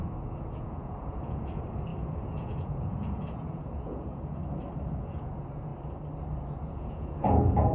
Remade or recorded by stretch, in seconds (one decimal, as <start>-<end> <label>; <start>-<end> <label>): 0.0-4.4 remade; 4.4-5.0 recorded; 5.0-5.7 remade; 5.7-6.6 recorded; 6.6-7.7 remade